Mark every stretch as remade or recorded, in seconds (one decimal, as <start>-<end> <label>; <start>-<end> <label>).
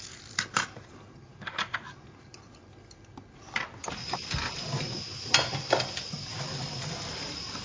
0.0-1.3 remade; 1.3-5.6 recorded; 5.6-7.6 remade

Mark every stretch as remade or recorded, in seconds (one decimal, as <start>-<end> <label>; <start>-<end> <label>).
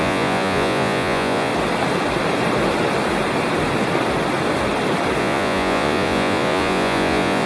0.0-1.5 remade; 1.5-5.2 recorded; 5.2-7.5 remade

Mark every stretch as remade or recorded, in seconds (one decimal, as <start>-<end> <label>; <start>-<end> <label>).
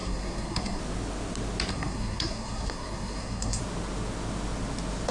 0.0-0.8 remade; 0.8-1.7 recorded; 1.7-3.6 remade; 3.6-5.1 recorded